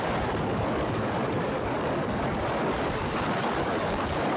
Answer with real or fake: fake